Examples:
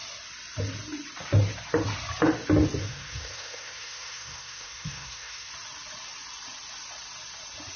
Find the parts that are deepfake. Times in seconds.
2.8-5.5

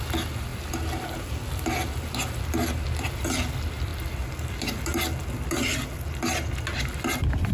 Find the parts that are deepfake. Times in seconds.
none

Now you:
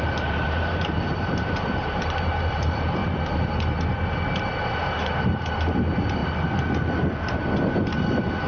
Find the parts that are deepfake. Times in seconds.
0.0-3.0; 5.0-6.2